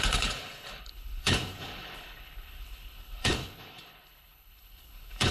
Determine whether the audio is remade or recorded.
remade